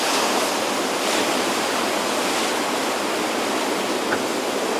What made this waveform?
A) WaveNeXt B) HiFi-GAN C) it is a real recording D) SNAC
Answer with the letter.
C